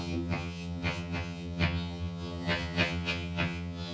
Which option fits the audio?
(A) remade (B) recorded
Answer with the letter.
A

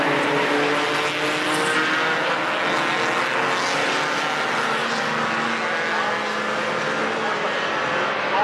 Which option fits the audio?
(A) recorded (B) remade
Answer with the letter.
A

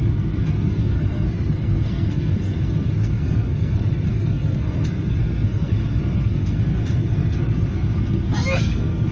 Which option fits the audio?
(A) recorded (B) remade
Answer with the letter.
B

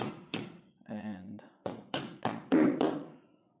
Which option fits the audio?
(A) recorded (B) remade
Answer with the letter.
B